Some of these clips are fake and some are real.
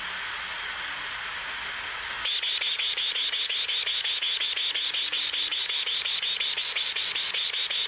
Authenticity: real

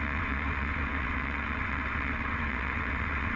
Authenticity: fake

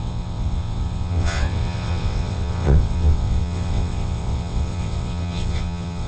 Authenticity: fake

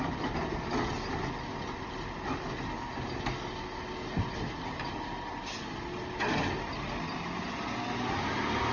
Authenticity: real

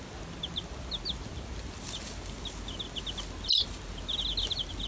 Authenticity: real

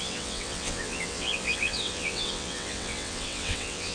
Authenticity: fake